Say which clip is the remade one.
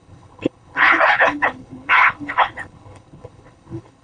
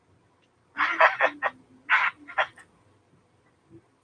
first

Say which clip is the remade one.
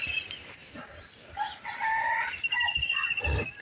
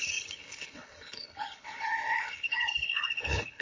second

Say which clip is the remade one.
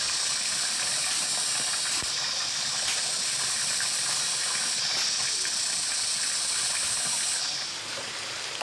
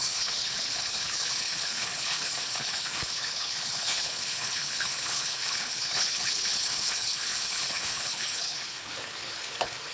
second